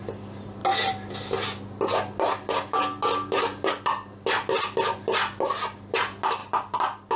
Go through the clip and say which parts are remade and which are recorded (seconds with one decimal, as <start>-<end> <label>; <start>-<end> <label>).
0.0-7.2 recorded